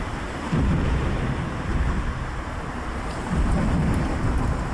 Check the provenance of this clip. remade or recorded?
remade